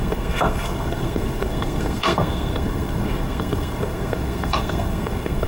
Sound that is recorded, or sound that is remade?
remade